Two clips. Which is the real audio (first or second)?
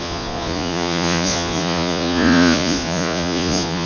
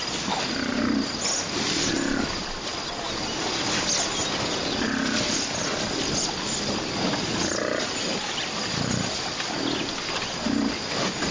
second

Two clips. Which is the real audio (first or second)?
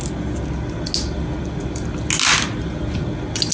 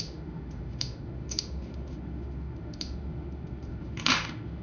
first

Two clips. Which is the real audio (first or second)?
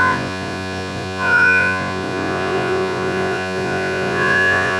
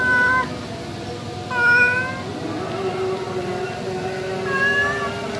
second